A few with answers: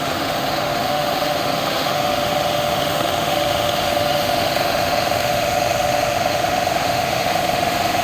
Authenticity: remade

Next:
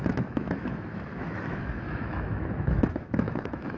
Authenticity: remade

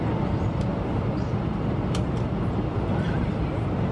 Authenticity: recorded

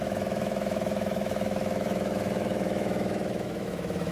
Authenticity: remade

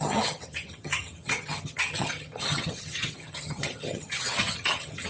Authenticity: remade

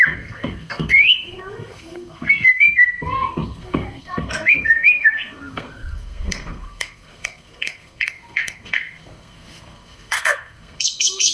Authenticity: remade